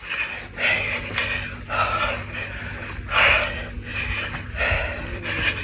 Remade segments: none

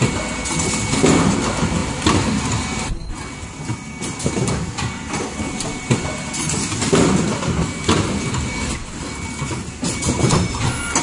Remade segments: none

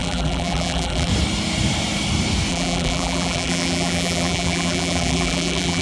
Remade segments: 0.0-1.1 (vocoder, BigVGAN v2); 2.5-5.8

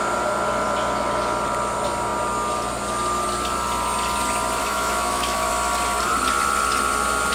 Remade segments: 4.6-5.5 (autoencoder, DAC-VAE)